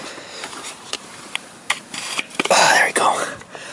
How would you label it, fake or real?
fake